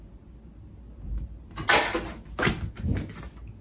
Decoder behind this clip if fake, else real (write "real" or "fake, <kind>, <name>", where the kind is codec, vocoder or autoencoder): real